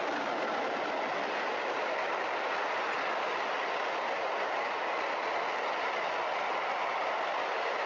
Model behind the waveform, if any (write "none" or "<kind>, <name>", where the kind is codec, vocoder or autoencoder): none